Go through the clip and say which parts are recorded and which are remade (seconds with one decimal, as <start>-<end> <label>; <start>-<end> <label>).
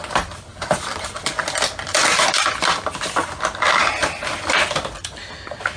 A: 0.0-5.8 recorded